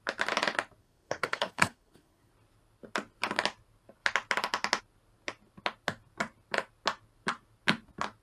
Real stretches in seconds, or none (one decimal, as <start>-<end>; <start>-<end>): 0.0-0.8; 2.3-8.2